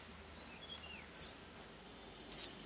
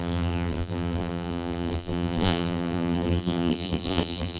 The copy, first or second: second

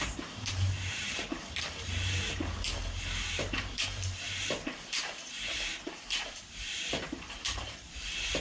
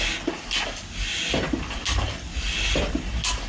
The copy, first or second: first